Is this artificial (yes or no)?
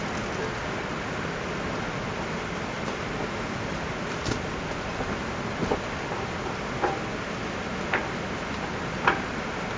no